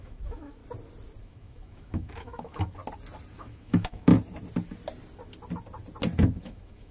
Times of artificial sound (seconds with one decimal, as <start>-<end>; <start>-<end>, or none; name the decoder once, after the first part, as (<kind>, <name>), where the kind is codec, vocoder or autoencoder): 0.0-0.6 (autoencoder, DAC-VAE); 1.2-2.8; 3.3-4.1; 6.4-6.9